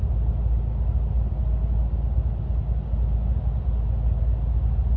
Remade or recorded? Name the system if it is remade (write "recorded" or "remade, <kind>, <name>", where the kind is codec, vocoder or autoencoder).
recorded